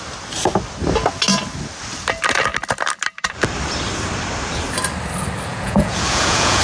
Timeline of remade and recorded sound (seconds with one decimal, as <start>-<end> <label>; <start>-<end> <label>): 0.0-5.5 recorded; 5.5-6.6 remade